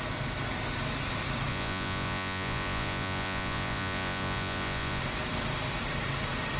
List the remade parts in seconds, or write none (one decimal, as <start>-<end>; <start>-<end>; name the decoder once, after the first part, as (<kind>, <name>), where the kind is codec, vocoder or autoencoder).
1.5-5.0 (vocoder, Vocos)